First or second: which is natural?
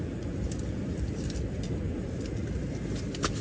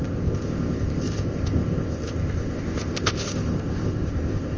first